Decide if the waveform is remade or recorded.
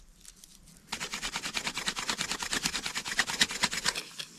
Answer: recorded